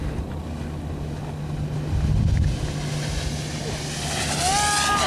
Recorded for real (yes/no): yes